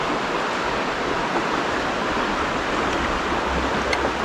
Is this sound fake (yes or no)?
no